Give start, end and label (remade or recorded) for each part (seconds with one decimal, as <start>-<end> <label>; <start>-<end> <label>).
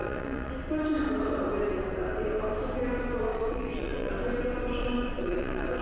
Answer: 0.0-0.5 remade; 0.5-3.3 recorded; 3.3-4.1 remade; 4.1-4.8 recorded; 4.8-5.8 remade